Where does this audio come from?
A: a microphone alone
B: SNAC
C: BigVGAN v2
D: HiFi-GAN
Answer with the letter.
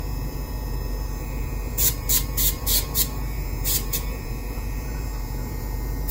C